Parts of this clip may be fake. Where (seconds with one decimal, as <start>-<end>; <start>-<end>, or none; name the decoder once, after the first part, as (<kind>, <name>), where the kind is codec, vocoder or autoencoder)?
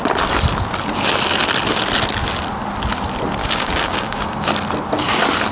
3.4-4.5 (codec, DAC)